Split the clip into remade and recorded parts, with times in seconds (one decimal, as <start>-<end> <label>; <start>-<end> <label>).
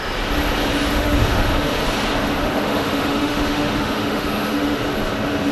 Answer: 0.0-0.9 recorded; 0.9-1.8 remade; 1.8-2.4 recorded; 2.4-4.8 remade; 4.8-5.5 recorded